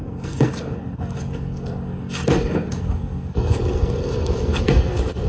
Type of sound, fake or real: fake